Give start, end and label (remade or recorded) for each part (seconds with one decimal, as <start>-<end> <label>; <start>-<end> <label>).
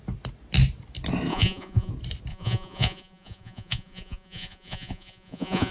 0.0-1.3 recorded; 1.3-1.9 remade; 1.9-2.3 recorded; 2.3-5.7 remade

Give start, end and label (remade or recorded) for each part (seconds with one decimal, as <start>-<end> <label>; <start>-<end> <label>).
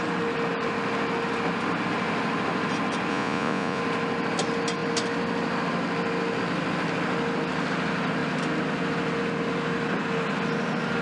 0.0-3.1 recorded; 3.1-3.8 remade; 3.8-11.0 recorded